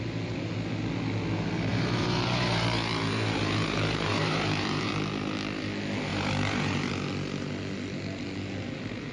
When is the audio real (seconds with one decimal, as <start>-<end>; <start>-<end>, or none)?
0.0-1.7; 4.9-6.1; 6.9-9.1